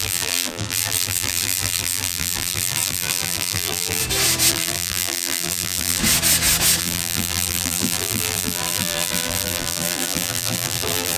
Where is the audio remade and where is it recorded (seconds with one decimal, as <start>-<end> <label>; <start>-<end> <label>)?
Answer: 0.0-4.0 remade; 4.0-4.5 recorded; 4.5-6.0 remade; 6.0-6.8 recorded; 6.8-11.2 remade

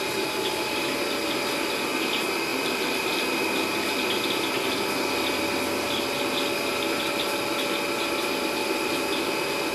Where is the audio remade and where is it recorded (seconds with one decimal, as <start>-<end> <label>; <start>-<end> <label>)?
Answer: 0.0-2.5 recorded; 2.5-3.4 remade; 3.4-9.7 recorded

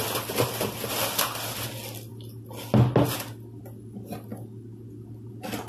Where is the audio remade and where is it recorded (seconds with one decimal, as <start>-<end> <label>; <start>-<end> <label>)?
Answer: 0.0-5.7 recorded

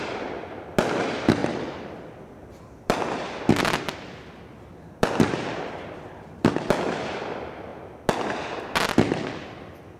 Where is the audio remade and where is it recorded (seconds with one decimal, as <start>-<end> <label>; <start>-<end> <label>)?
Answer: 0.0-1.4 recorded; 1.4-6.5 remade; 6.5-10.0 recorded

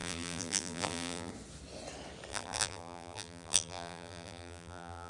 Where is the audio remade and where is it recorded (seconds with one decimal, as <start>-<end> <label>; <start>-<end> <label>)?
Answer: 0.0-1.3 remade; 1.3-2.3 recorded; 2.3-5.1 remade

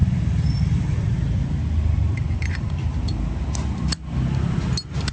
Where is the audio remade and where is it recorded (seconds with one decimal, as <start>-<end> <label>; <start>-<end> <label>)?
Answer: 0.0-2.7 remade; 2.7-5.1 recorded